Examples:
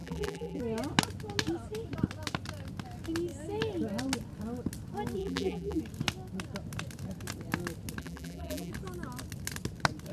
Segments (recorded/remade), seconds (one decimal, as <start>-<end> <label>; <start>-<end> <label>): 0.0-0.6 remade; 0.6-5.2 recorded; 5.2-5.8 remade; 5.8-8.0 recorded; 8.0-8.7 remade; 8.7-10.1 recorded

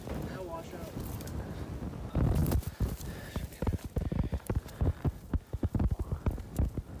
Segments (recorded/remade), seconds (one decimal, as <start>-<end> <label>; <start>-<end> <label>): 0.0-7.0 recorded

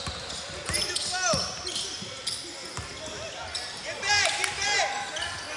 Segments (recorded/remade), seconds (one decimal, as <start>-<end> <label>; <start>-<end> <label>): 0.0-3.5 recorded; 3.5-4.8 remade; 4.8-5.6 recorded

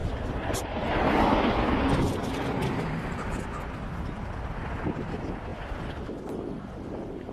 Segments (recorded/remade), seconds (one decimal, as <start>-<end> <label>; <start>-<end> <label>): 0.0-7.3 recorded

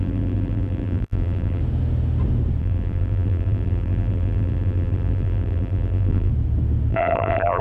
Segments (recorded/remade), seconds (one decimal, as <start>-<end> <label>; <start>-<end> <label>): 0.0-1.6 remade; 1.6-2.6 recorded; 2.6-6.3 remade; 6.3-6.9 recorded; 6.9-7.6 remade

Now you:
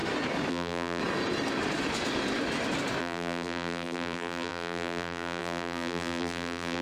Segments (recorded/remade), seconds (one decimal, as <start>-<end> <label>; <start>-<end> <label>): 0.0-0.5 recorded; 0.5-1.0 remade; 1.0-3.0 recorded; 3.0-6.8 remade